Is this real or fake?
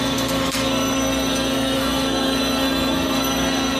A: fake